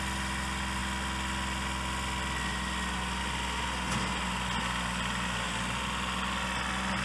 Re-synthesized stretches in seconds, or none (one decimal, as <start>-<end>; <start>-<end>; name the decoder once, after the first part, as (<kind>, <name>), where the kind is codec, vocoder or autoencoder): none